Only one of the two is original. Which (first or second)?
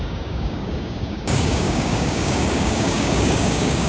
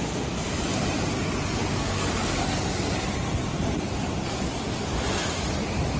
second